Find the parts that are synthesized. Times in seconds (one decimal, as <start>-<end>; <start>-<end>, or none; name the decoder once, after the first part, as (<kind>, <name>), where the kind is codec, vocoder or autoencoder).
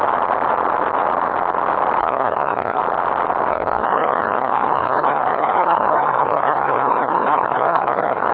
2.0-2.8 (codec, SNAC); 3.5-8.3